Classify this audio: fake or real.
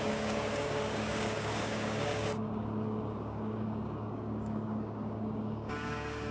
fake